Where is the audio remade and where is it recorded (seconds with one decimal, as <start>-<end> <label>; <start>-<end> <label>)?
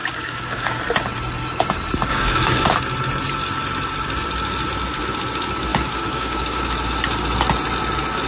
0.0-0.8 remade; 0.8-2.1 recorded; 2.1-2.7 remade; 2.7-5.7 recorded; 5.7-6.6 remade; 6.6-8.3 recorded